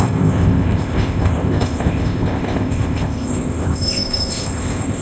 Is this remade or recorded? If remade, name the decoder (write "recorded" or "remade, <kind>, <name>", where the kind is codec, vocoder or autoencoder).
remade, codec, ZipCodec